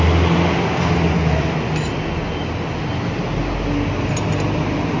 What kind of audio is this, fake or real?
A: real